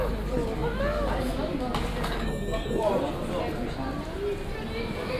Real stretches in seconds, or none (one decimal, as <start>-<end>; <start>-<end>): 0.0-1.9; 2.9-5.2